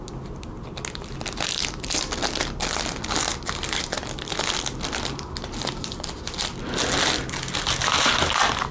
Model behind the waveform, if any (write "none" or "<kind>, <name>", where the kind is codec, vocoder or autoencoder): none